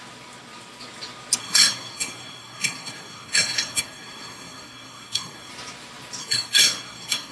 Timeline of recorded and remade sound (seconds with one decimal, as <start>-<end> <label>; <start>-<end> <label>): 0.0-1.4 recorded; 1.4-5.5 remade; 5.5-6.2 recorded; 6.2-7.3 remade